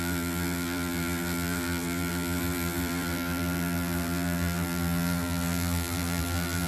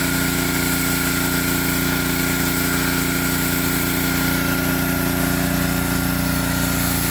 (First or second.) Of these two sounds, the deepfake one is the first